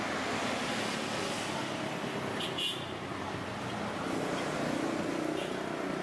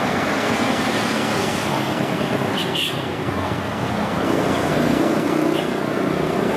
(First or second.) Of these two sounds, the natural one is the first